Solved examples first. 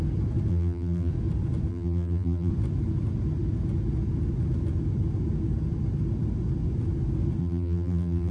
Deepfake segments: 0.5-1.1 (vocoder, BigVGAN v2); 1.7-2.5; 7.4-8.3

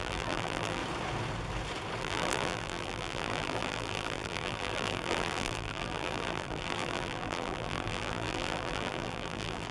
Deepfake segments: 0.0-0.8 (vocoder, BigVGAN v2); 2.0-9.7

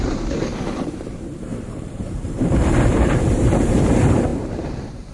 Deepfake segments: 0.0-5.1 (vocoder, BigVGAN v2)

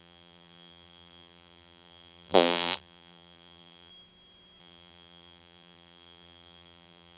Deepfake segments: 0.0-3.9 (vocoder, BigVGAN v2); 4.6-7.2

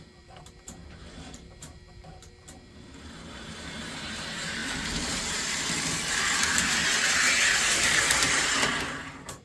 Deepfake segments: 0.0-6.8 (vocoder, BigVGAN v2); 7.5-9.4

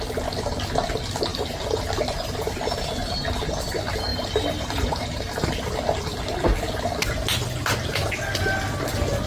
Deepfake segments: 1.3-1.8 (vocoder, BigVGAN v2); 4.1-5.5

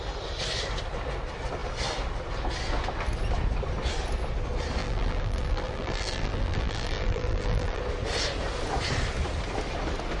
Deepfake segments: 4.8-7.8 (vocoder, BigVGAN v2)

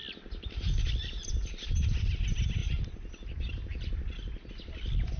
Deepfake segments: none